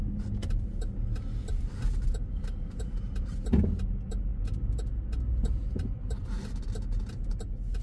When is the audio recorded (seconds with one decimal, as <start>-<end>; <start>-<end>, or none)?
0.0-7.8